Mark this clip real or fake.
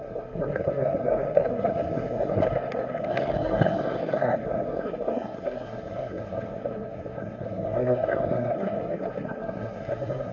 fake